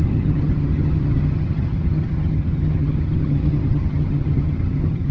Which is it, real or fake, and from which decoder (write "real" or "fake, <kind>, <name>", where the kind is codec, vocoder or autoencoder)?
fake, vocoder, HiFi-GAN